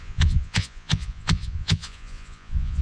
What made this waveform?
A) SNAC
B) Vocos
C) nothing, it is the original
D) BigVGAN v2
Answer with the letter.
B